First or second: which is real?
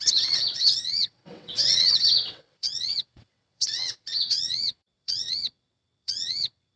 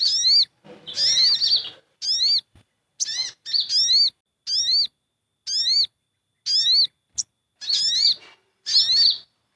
second